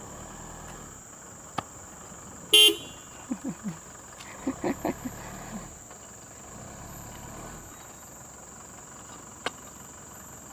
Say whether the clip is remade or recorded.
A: recorded